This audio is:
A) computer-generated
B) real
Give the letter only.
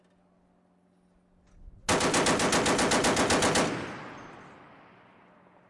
B